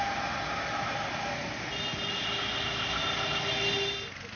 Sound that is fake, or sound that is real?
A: real